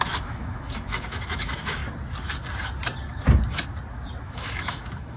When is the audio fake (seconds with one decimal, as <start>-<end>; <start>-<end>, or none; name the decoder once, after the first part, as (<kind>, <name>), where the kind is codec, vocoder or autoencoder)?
0.0-1.8 (autoencoder, DAC-VAE); 4.2-5.2